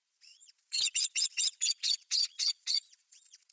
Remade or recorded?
remade